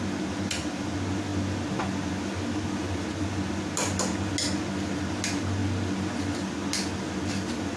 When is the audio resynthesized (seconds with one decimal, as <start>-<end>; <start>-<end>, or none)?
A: none